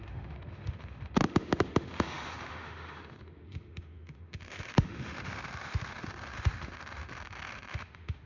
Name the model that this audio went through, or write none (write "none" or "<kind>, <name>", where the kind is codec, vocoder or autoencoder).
autoencoder, DAC-VAE